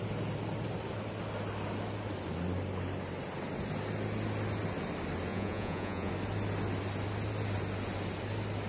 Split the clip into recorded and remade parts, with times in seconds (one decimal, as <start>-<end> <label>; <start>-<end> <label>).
0.0-5.3 recorded; 5.3-6.1 remade; 6.1-8.7 recorded